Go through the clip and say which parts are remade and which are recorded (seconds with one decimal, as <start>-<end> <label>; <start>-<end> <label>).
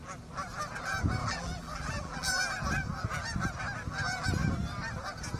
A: 0.0-1.2 recorded; 1.2-2.4 remade; 2.4-5.4 recorded